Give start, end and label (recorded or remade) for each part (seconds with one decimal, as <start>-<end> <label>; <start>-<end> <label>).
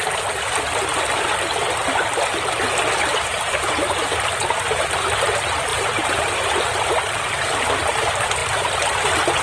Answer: 0.0-3.1 recorded; 3.1-3.7 remade; 3.7-5.7 recorded; 5.7-6.3 remade; 6.3-9.4 recorded